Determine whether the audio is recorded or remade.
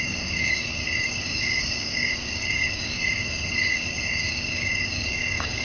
remade